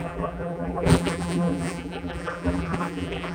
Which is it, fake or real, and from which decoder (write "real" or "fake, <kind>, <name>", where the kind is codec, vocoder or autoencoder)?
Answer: fake, vocoder, BigVGAN v2